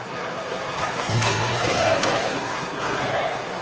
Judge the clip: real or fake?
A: fake